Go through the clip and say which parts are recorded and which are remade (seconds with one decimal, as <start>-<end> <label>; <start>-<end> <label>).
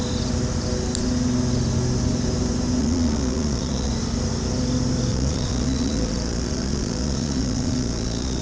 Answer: 0.0-2.8 recorded; 2.8-3.9 remade; 3.9-5.1 recorded; 5.1-8.4 remade